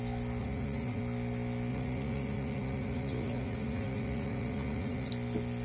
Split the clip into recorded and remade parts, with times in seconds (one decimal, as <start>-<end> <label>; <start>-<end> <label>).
0.0-0.4 recorded; 0.4-1.0 remade; 1.0-1.7 recorded; 1.7-5.1 remade; 5.1-5.6 recorded